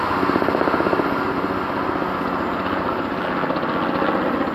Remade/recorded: recorded